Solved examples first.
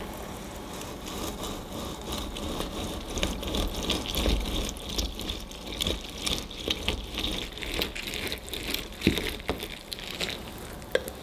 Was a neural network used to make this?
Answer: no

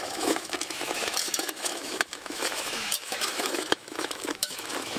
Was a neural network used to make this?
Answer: yes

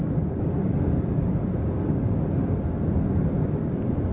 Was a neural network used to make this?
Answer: yes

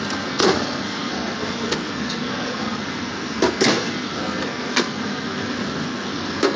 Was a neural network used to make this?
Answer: yes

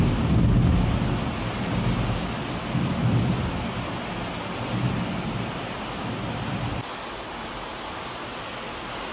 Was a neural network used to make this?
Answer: no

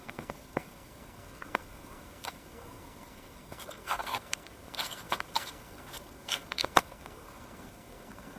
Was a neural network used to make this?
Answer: yes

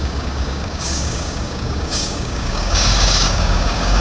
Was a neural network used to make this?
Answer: yes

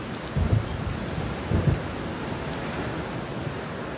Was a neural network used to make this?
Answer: no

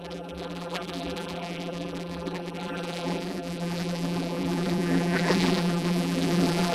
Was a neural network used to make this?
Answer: yes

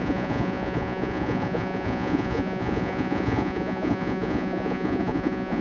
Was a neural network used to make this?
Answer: yes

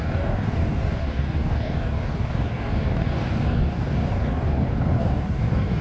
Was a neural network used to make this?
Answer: yes